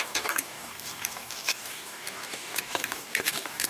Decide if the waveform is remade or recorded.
remade